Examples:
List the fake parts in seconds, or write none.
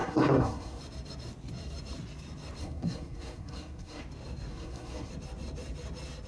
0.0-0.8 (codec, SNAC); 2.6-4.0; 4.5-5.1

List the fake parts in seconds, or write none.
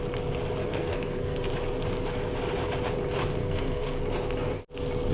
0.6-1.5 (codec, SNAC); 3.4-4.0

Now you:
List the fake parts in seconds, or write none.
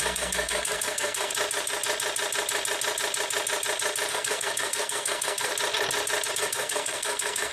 0.0-1.3 (codec, SNAC); 4.1-5.5; 6.3-7.5